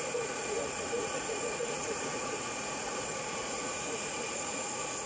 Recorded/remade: remade